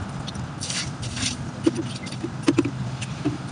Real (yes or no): yes